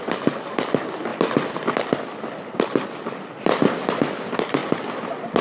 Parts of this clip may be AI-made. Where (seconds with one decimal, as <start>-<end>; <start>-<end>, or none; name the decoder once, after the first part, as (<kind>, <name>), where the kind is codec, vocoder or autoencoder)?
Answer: 1.1-3.9 (vocoder, BigVGAN v2)